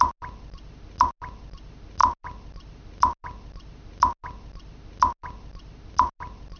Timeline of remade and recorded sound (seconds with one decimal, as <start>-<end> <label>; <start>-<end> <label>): 0.0-6.6 recorded